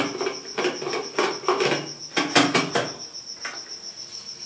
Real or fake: real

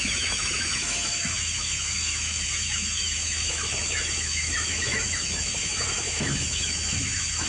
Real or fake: fake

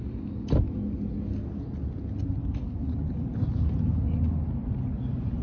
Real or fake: real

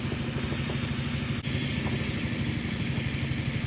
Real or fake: real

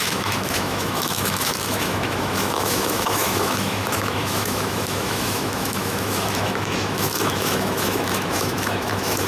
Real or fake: fake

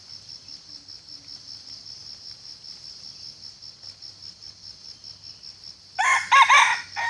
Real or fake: real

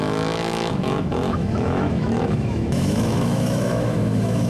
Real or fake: fake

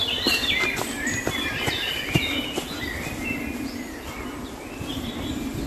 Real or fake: real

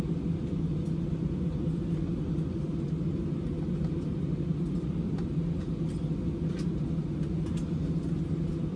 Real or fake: real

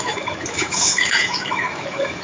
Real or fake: fake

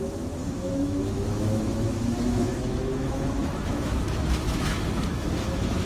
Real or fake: fake